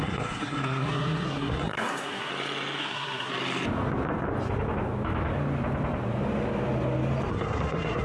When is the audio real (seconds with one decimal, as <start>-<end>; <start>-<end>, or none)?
2.3-2.8; 3.3-7.3